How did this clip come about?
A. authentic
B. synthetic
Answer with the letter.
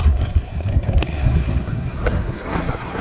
B